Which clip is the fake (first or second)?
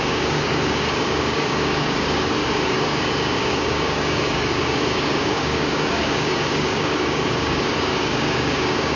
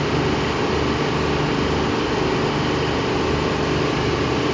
first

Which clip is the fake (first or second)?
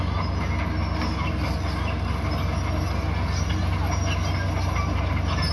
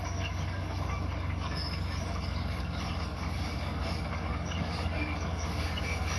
second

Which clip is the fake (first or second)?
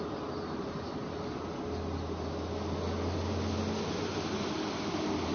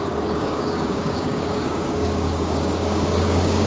second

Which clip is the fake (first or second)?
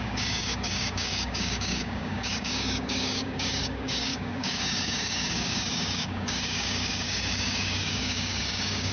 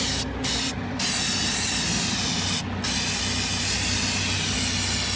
first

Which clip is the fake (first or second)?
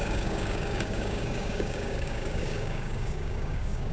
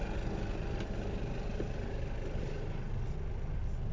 first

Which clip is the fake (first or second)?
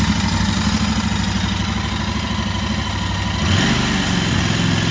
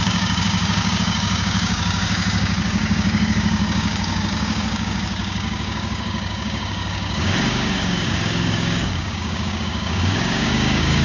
second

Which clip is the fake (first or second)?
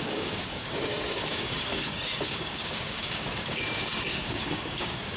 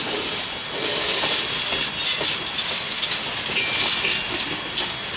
first